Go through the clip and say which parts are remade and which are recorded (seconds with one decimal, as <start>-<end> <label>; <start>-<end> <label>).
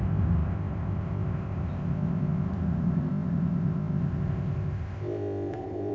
0.0-5.9 remade